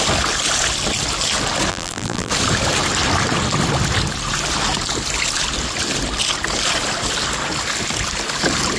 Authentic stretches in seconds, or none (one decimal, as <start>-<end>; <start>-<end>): 0.0-1.7; 2.3-8.8